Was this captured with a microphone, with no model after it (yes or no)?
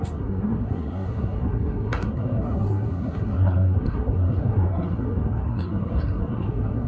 no